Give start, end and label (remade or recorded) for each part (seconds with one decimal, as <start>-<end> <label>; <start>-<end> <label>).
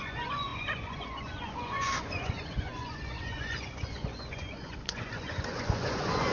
0.0-6.3 remade